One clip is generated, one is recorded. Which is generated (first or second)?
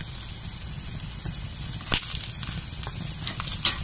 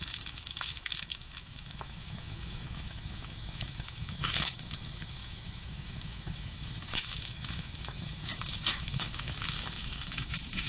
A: second